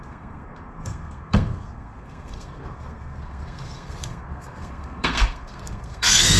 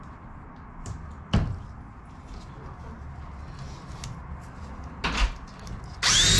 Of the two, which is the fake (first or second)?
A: first